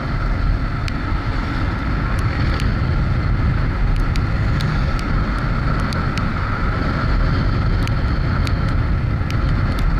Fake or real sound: real